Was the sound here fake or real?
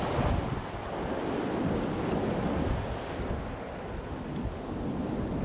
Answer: real